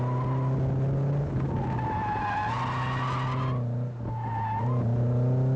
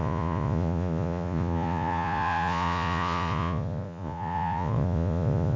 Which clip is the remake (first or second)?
second